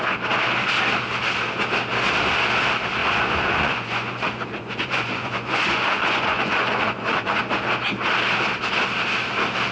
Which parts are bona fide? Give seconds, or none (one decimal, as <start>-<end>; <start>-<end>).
0.0-3.0; 7.4-9.7